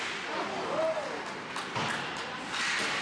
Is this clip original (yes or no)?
yes